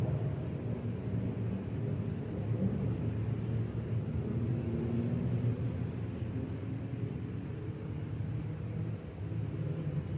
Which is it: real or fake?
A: real